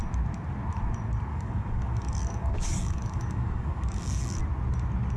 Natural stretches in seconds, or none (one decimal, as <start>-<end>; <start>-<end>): 0.0-1.3; 4.4-5.2